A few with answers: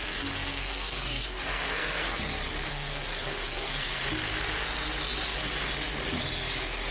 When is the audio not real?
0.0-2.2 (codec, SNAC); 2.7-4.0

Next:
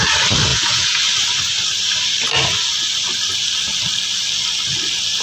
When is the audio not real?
0.5-1.0 (vocoder, Vocos)

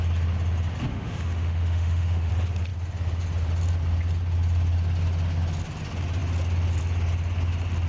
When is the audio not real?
0.9-2.3 (autoencoder, DAC-VAE)

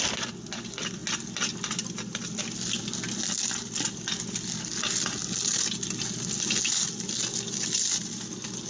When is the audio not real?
none

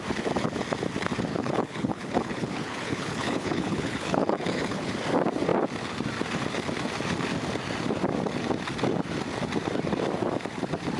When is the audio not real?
1.3-4.9 (codec, HILCodec)

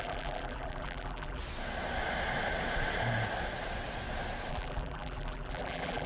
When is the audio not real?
0.0-1.4 (vocoder, BigVGAN v2); 4.5-6.1

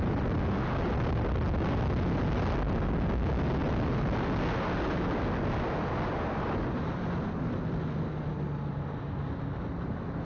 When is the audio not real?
none

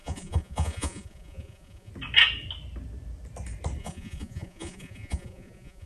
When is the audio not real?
0.0-1.9 (vocoder, Vocos); 3.8-5.9